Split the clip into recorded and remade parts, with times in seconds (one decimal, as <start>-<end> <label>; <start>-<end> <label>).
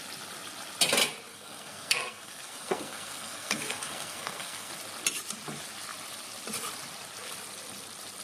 0.0-1.3 recorded; 1.3-4.7 remade; 4.7-8.2 recorded